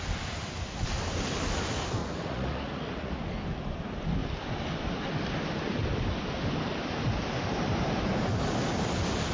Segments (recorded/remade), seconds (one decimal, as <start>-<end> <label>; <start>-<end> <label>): 0.0-2.0 recorded; 2.0-3.2 remade; 3.2-9.3 recorded